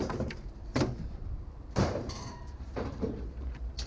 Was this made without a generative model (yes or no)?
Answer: no